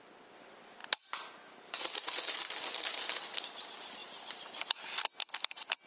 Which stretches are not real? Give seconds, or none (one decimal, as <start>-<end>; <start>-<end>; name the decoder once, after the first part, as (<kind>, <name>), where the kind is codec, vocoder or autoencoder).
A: none